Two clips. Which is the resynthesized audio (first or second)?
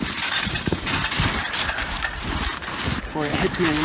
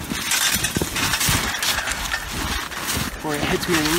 first